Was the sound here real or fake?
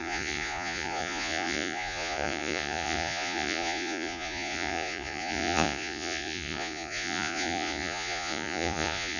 fake